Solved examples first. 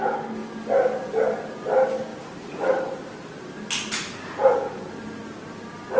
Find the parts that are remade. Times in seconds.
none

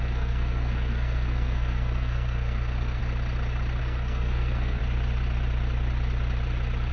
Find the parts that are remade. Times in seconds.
0.0-3.0 (codec, SNAC); 3.8-4.8

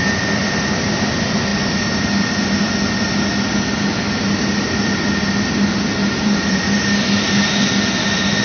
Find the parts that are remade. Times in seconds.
6.0-6.6 (vocoder, BigVGAN v2)

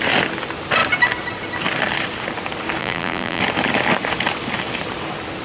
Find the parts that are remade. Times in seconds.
2.8-3.4 (vocoder, BigVGAN v2)